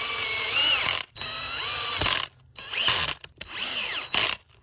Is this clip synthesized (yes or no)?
no